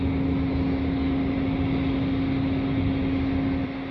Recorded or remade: recorded